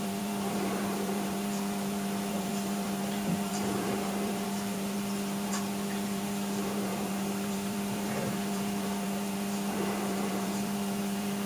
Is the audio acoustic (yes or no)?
no